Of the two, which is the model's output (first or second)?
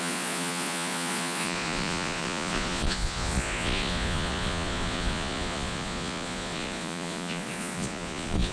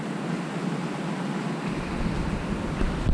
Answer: first